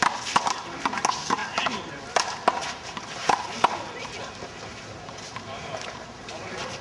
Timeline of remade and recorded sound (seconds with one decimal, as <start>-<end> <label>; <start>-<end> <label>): 0.0-2.6 recorded; 2.6-3.4 remade; 3.4-4.7 recorded; 4.7-6.3 remade; 6.3-6.8 recorded